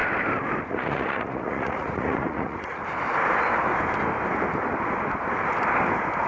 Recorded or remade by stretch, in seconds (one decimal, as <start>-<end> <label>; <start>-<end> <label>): 0.0-0.7 recorded; 0.7-2.8 remade; 2.8-6.3 recorded